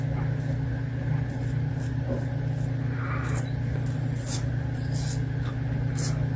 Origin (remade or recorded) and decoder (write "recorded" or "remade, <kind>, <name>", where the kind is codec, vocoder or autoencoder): recorded